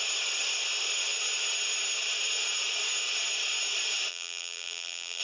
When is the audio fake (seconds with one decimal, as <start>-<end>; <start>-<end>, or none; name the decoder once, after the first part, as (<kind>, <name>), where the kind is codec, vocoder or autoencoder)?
4.1-5.2 (vocoder, BigVGAN v2)